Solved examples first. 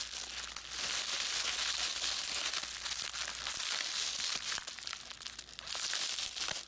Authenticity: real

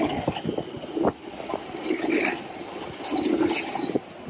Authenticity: real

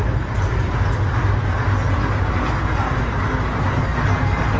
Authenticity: real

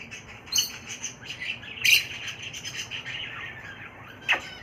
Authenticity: fake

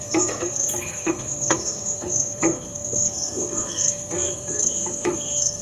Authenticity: fake